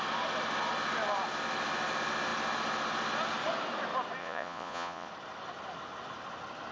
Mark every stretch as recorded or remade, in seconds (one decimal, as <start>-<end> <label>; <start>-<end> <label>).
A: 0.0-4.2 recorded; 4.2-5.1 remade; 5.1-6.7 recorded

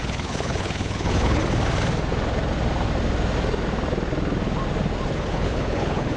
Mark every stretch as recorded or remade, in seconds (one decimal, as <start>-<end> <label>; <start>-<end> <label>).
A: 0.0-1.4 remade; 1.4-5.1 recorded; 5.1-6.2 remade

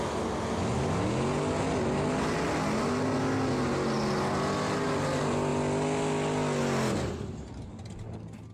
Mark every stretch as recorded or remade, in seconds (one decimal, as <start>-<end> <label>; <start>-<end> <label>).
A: 0.0-8.5 recorded

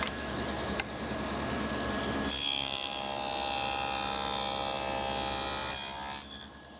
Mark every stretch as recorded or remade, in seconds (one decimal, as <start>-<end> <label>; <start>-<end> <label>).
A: 0.0-6.8 recorded